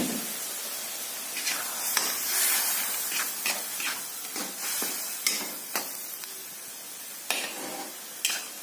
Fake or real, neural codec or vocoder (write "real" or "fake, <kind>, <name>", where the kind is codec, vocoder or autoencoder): real